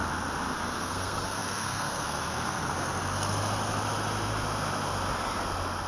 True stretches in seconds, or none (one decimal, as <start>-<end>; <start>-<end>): 0.0-0.8; 2.7-5.9